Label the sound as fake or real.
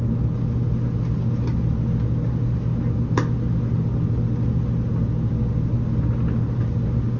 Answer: real